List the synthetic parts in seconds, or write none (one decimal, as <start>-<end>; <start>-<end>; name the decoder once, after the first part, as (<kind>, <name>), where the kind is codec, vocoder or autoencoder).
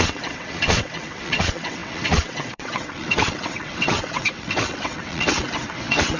0.0-6.2 (vocoder, WaveNeXt)